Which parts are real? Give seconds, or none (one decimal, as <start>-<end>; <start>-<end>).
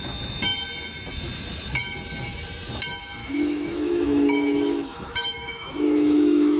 0.0-3.2